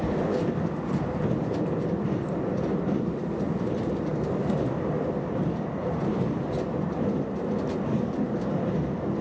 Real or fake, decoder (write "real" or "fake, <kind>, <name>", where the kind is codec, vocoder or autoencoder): real